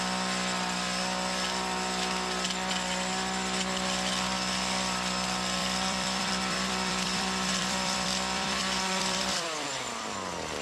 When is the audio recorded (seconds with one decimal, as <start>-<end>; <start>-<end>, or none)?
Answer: 0.0-5.6